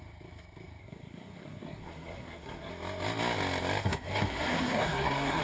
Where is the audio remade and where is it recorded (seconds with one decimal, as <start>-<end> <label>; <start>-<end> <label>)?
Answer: 0.0-0.8 recorded; 0.8-2.7 remade; 2.7-3.8 recorded; 3.8-5.4 remade